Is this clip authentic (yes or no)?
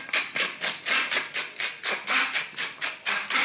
yes